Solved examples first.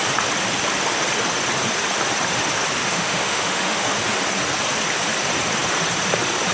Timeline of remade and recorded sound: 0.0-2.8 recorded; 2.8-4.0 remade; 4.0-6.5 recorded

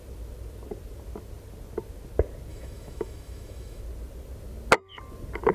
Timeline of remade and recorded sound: 0.0-2.5 recorded; 2.5-3.8 remade; 3.8-5.5 recorded